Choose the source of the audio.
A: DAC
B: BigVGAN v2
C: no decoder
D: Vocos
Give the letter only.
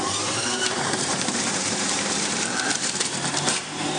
B